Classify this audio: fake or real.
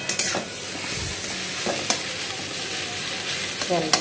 real